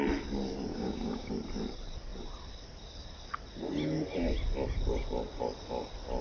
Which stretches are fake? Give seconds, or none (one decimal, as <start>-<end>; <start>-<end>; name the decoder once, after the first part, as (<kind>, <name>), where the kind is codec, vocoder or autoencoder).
0.7-1.3 (codec, DAC)